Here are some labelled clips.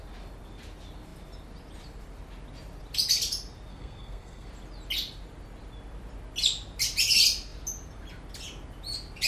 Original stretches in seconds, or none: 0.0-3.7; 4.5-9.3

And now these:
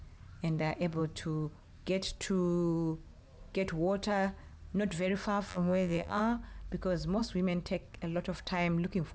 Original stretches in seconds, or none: 0.0-5.5; 6.2-9.1

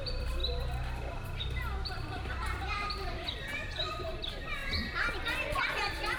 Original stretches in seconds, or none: 0.4-1.9; 4.6-5.7

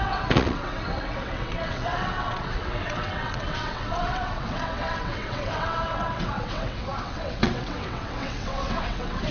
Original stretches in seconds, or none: none

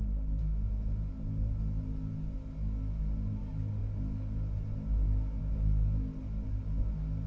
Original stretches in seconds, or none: 0.0-0.4; 1.1-7.3

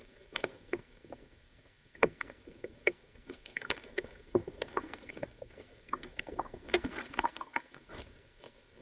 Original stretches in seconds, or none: none